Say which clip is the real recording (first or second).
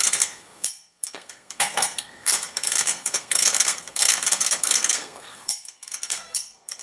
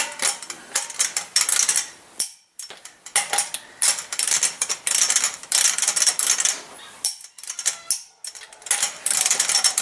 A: second